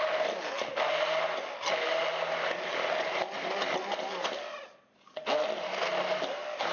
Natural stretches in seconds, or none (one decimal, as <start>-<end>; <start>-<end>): 0.0-6.7